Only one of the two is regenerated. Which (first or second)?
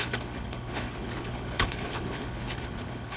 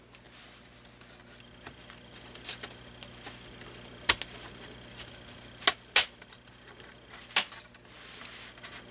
first